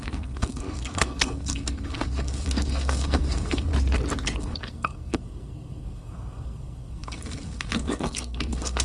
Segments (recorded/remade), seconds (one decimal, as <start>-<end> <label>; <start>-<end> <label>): 0.0-3.7 remade; 3.7-4.4 recorded; 4.4-8.8 remade